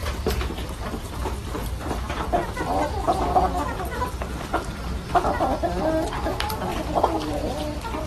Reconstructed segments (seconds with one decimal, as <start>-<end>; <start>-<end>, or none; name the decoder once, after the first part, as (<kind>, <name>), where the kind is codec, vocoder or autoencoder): 0.0-1.8 (vocoder, BigVGAN v2); 6.7-7.3